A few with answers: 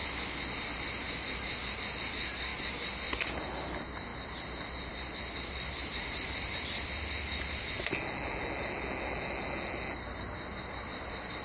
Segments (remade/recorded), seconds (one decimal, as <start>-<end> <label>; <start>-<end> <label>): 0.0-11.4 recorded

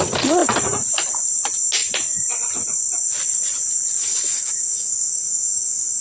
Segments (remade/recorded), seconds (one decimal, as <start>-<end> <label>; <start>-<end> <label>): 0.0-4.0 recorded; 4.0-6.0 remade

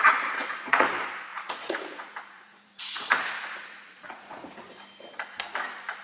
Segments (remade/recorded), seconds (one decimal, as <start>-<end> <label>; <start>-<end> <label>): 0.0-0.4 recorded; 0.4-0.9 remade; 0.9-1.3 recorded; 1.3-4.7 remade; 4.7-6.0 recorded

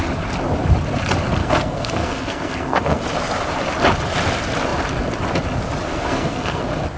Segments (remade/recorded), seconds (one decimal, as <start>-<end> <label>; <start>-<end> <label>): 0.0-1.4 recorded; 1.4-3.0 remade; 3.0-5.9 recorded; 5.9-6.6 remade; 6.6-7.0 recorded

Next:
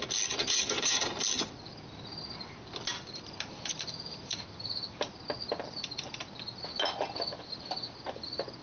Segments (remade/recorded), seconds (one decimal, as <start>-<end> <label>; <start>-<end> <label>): 0.0-0.4 recorded; 0.4-1.1 remade; 1.1-8.6 recorded